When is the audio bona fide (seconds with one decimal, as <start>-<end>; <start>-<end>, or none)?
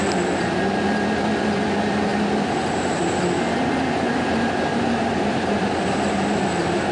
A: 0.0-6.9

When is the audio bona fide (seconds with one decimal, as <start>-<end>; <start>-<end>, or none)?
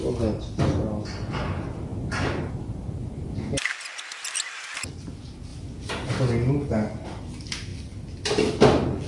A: 0.0-9.1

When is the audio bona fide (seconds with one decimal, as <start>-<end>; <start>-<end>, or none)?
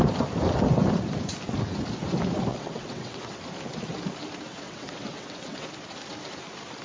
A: 0.0-2.5; 3.4-4.5; 5.7-6.8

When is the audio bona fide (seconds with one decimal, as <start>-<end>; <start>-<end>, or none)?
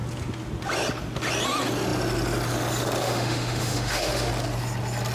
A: 0.0-3.0; 4.3-5.1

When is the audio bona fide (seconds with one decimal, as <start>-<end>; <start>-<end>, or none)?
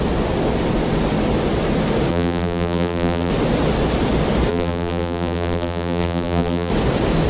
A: 0.0-2.1; 3.3-4.5; 6.7-7.3